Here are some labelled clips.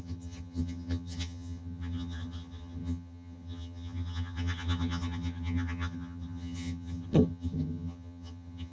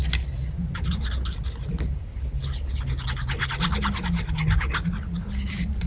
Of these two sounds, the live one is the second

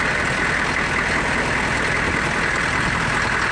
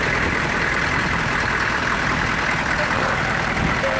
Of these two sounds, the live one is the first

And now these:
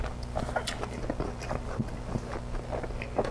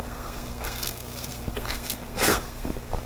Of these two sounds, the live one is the first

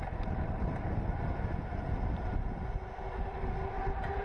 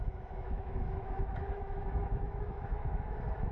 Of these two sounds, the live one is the first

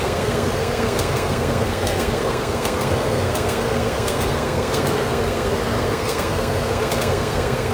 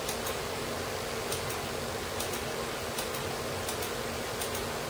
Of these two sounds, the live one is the second